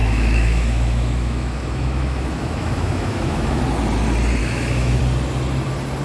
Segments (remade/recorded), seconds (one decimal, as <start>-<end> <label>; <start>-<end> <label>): 0.0-3.6 remade; 3.6-4.4 recorded; 4.4-5.0 remade; 5.0-6.0 recorded